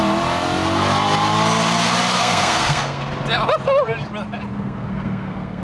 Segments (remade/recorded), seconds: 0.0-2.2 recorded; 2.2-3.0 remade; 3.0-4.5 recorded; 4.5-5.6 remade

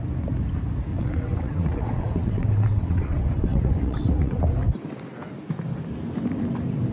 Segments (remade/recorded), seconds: 0.0-0.9 recorded; 0.9-4.4 remade; 4.4-6.9 recorded

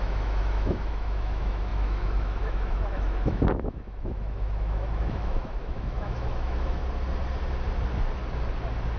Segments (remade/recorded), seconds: 0.0-6.8 remade; 6.8-9.0 recorded